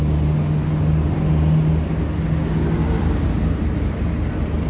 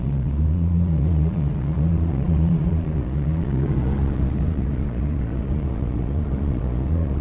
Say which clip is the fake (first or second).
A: second